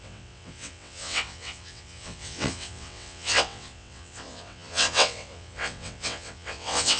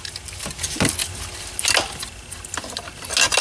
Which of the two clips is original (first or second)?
second